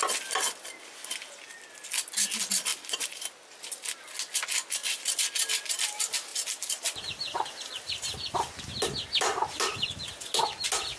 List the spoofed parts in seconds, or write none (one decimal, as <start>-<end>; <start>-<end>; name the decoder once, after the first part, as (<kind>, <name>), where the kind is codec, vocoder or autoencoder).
2.7-3.2 (vocoder, BigVGAN v2); 6.3-8.5